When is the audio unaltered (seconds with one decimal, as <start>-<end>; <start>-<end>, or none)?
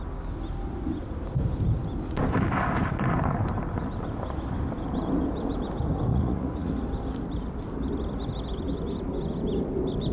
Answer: 0.0-6.1; 6.7-10.1